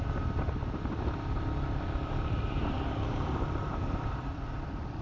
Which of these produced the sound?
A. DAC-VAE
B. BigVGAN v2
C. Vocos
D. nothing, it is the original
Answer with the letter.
B